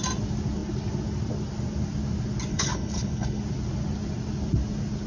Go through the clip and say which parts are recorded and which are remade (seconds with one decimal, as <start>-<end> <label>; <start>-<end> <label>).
0.0-2.5 recorded; 2.5-3.4 remade; 3.4-5.1 recorded